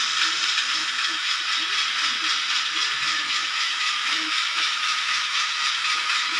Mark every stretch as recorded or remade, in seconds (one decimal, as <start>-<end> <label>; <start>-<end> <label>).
0.0-0.8 recorded; 0.8-1.4 remade; 1.4-3.1 recorded; 3.1-6.4 remade